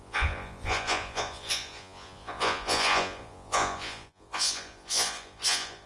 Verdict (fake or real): fake